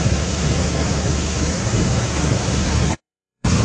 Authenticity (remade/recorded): remade